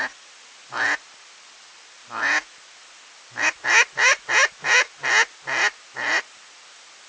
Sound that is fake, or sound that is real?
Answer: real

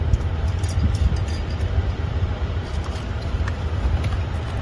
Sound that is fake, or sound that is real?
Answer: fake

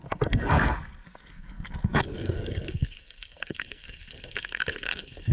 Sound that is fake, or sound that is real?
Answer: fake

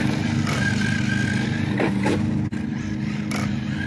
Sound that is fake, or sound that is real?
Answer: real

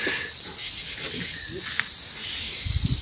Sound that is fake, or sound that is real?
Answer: real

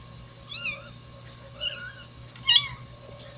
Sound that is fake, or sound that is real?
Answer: real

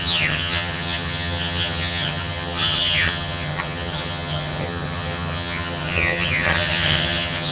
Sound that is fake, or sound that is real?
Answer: fake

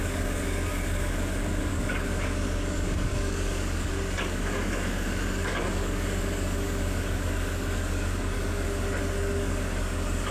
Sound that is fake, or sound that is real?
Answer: fake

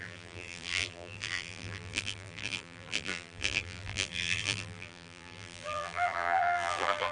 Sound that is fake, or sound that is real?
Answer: fake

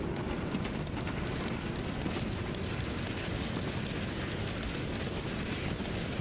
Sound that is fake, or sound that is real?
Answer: real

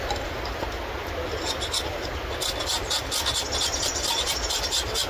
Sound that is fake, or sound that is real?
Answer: real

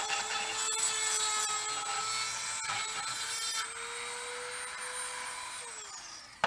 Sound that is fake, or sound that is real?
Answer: real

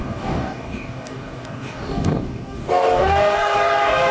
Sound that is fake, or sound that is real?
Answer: fake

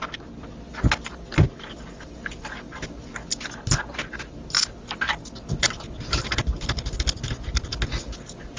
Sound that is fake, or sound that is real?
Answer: real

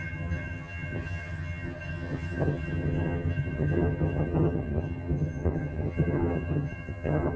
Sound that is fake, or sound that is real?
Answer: fake